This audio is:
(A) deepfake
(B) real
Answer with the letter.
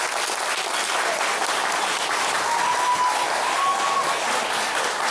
B